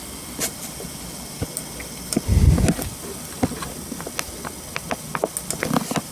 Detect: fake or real real